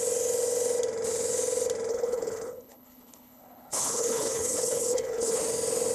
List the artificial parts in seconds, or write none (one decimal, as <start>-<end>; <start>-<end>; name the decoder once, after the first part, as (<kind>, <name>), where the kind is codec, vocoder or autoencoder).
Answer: 1.9-5.4 (codec, HILCodec)